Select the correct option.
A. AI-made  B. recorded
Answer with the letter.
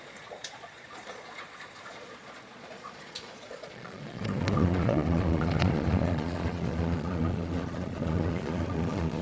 A